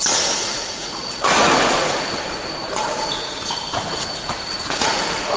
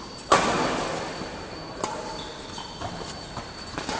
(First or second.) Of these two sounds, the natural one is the second